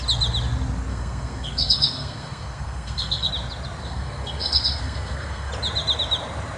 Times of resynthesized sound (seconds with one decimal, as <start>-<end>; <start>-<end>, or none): 0.9-3.3; 3.8-5.5